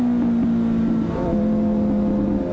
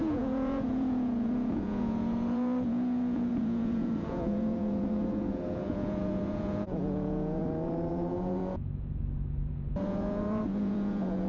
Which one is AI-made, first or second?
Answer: second